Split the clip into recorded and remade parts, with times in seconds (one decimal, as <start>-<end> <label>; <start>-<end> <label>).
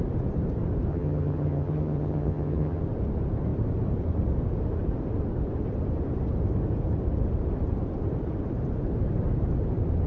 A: 0.0-0.9 recorded; 0.9-2.8 remade; 2.8-10.1 recorded